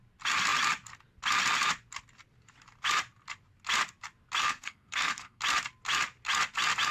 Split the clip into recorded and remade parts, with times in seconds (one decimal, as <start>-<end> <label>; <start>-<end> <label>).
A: 0.0-4.4 recorded; 4.4-5.4 remade; 5.4-6.9 recorded